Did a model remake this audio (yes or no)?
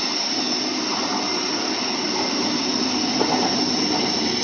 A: no